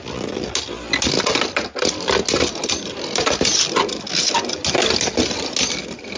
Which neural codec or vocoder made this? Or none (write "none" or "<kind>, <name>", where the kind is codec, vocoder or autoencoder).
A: none